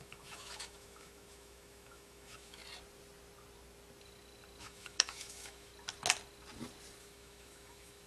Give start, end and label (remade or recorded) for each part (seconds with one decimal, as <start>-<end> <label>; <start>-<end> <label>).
0.0-2.6 remade; 2.6-4.6 recorded; 4.6-5.7 remade; 5.7-7.0 recorded; 7.0-8.1 remade